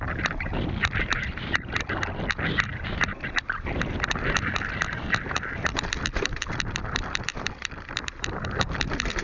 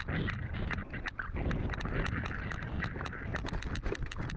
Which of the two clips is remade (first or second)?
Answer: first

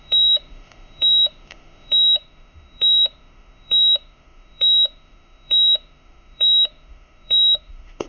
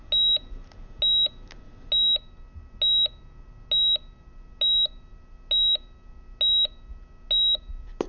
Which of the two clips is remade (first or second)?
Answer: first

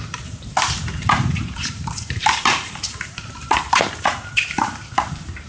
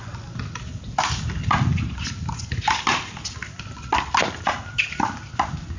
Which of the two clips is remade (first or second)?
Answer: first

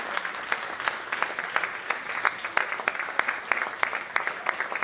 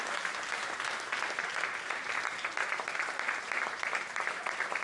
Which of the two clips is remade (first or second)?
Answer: second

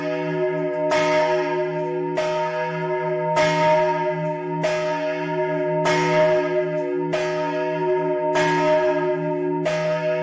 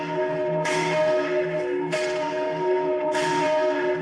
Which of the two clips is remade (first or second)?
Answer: second